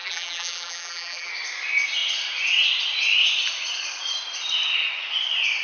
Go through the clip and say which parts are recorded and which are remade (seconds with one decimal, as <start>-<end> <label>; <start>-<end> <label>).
0.0-1.3 remade; 1.3-5.6 recorded